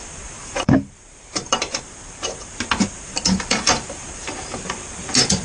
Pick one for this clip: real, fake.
fake